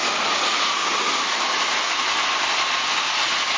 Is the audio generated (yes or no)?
no